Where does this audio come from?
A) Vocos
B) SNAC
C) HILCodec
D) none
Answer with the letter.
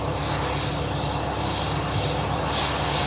D